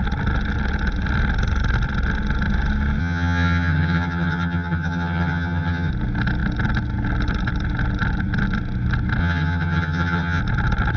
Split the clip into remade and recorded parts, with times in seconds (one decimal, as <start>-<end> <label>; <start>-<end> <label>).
0.0-3.0 recorded; 3.0-5.9 remade; 5.9-9.2 recorded; 9.2-10.4 remade; 10.4-11.0 recorded